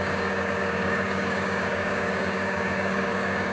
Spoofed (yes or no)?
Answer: yes